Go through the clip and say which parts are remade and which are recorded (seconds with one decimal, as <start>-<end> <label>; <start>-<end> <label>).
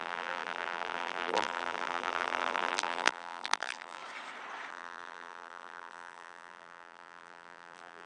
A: 0.0-4.0 remade; 4.0-4.7 recorded; 4.7-8.1 remade